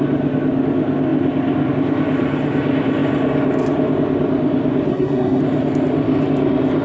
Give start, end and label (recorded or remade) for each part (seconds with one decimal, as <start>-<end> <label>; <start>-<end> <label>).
0.0-4.9 recorded; 4.9-5.4 remade; 5.4-6.8 recorded